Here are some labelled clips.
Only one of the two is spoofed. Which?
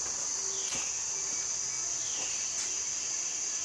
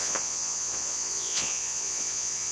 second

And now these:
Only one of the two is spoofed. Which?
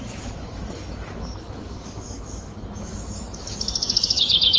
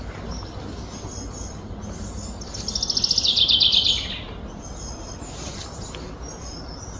first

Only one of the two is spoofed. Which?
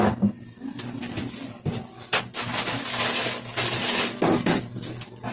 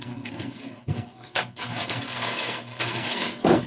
second